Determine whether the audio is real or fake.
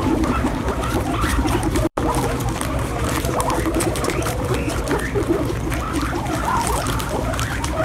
fake